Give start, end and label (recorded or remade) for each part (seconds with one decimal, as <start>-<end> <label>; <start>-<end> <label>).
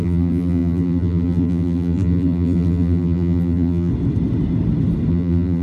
0.0-3.9 remade; 3.9-5.1 recorded; 5.1-5.6 remade